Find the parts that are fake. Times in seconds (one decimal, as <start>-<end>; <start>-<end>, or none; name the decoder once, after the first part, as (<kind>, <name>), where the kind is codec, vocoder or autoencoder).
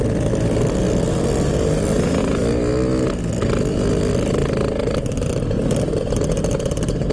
none